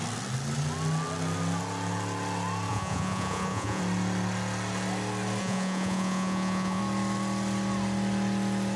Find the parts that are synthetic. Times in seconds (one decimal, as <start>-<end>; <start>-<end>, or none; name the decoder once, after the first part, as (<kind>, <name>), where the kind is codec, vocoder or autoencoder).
2.7-3.8 (vocoder, Vocos); 5.4-6.8